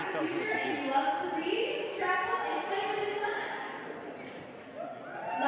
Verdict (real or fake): real